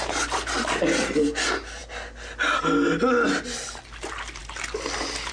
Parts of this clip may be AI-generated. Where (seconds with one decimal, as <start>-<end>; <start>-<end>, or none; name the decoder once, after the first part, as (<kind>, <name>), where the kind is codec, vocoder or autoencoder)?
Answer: none